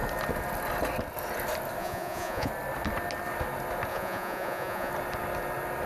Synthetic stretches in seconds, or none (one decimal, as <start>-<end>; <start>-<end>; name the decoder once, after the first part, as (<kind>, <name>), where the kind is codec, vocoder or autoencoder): 1.8-2.5 (vocoder, Vocos); 3.9-4.9